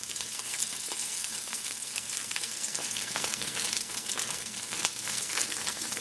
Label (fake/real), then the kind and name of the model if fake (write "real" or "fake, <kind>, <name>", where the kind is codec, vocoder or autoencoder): fake, codec, SNAC